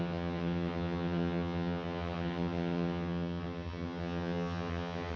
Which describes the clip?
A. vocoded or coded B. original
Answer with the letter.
A